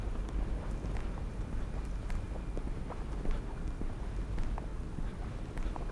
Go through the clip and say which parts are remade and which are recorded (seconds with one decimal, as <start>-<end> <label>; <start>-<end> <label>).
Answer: 0.0-4.7 recorded; 4.7-5.9 remade